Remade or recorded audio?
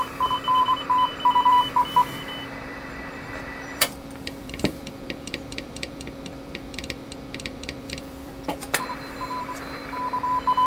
remade